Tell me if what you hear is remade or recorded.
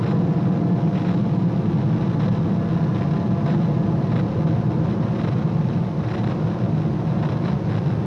recorded